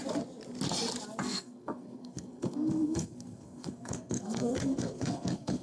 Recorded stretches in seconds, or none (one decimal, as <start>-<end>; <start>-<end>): 0.0-1.2